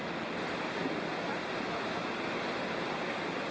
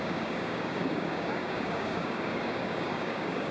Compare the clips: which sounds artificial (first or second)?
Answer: second